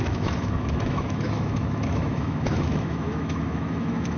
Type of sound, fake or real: fake